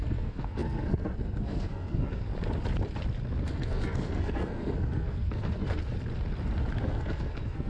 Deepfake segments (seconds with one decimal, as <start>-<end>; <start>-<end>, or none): 0.0-2.3; 3.4-5.8; 6.8-7.7